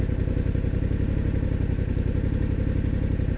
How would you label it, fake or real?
real